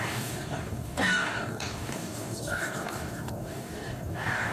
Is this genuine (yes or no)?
no